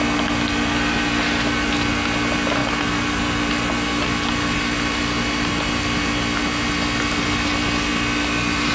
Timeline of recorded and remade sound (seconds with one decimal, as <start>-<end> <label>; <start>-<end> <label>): 0.0-8.7 recorded